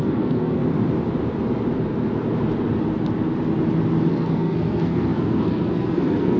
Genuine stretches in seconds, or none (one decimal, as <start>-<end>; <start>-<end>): 0.6-4.1